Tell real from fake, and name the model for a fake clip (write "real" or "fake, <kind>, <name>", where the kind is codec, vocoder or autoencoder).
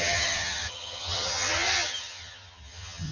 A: fake, vocoder, HiFi-GAN